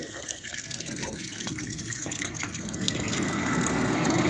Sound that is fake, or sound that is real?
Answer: fake